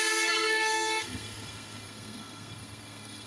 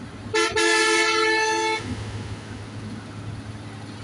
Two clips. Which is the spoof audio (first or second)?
first